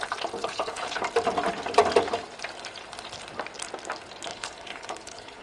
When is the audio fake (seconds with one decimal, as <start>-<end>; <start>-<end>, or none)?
0.4-1.0; 4.3-5.4